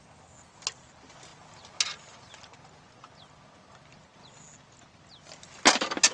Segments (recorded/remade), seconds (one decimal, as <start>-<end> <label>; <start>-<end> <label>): 0.0-6.1 recorded